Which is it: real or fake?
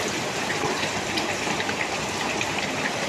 fake